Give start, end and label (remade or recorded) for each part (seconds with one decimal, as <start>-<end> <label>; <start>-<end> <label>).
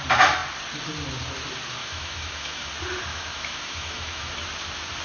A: 0.0-1.8 recorded; 1.8-2.7 remade; 2.7-3.1 recorded; 3.1-4.3 remade; 4.3-5.0 recorded